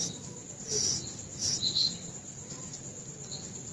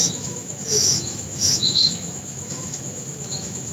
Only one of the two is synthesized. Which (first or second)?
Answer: second